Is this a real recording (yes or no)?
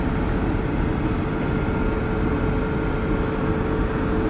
yes